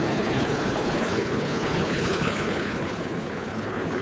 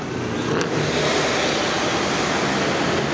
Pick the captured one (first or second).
second